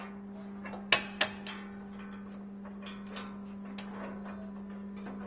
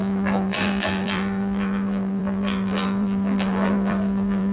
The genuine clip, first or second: first